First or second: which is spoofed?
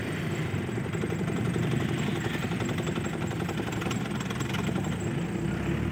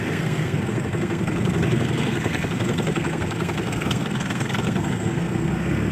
second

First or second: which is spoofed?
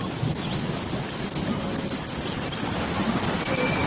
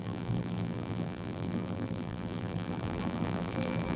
second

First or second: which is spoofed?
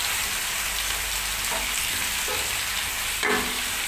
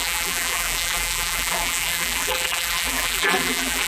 second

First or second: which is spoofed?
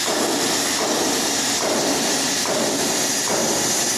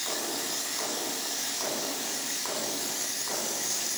second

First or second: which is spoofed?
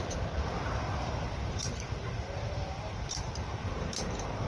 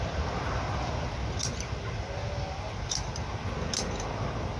first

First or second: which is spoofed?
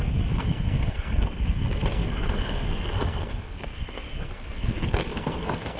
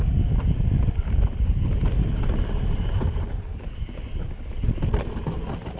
first